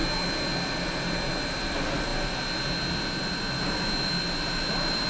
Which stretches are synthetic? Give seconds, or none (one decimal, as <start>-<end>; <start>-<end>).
none